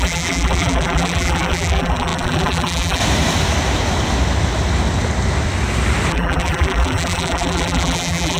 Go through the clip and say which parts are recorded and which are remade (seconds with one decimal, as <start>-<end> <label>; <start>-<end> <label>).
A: 0.0-3.0 remade; 3.0-6.1 recorded; 6.1-8.4 remade